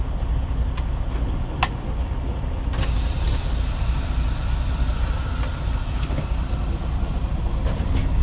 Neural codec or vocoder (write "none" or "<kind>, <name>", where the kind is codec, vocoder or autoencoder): none